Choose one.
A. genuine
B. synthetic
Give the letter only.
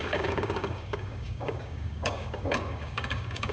B